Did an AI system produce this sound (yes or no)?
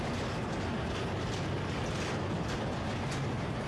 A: no